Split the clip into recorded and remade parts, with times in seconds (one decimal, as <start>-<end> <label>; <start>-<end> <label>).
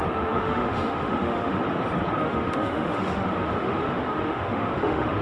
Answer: 0.0-1.6 remade; 1.6-2.2 recorded; 2.2-5.2 remade